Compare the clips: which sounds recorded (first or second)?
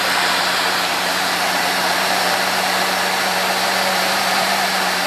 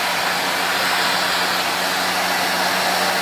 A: second